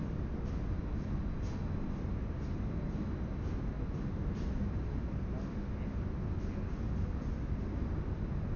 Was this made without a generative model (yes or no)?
yes